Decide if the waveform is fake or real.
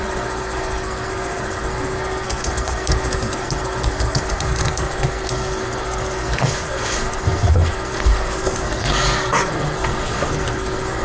fake